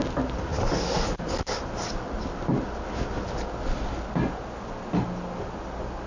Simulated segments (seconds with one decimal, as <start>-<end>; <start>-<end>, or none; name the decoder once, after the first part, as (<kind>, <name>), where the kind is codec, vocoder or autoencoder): none